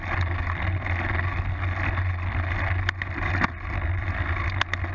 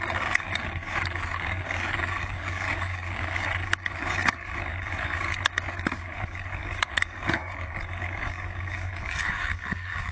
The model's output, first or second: second